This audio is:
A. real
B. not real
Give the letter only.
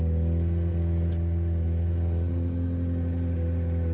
A